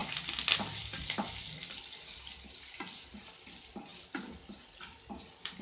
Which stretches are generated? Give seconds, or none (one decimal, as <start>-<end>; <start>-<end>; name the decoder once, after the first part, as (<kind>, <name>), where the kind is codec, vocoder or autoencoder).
none